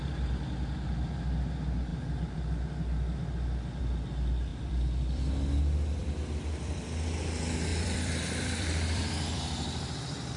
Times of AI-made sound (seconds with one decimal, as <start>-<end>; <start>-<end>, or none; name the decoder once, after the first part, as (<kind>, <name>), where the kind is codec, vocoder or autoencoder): 4.5-5.3 (vocoder, BigVGAN v2); 6.0-7.1; 7.7-9.4